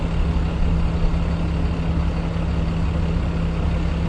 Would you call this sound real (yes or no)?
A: yes